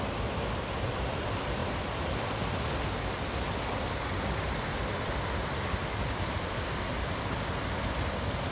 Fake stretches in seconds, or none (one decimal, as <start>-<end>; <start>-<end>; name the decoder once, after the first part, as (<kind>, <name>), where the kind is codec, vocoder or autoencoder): none